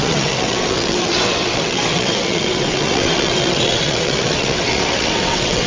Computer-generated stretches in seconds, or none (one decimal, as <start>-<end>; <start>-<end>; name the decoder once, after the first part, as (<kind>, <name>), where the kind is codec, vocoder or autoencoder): 0.0-5.7 (vocoder, WaveNeXt)